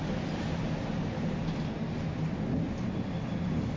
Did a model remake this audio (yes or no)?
no